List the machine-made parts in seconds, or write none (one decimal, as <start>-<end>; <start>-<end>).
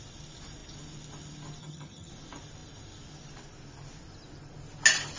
1.6-2.1